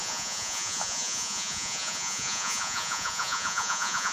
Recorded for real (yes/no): no